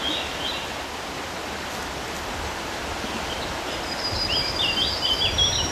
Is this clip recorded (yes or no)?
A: yes